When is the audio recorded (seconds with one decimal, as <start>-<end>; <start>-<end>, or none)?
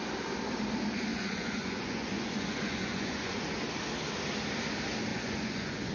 0.0-1.1; 3.4-5.1